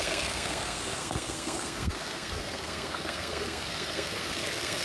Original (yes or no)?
no